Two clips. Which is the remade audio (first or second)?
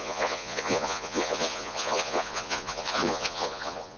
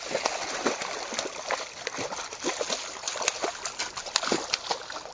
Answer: first